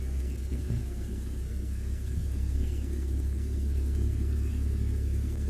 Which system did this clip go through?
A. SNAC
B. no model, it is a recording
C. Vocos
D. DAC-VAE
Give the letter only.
A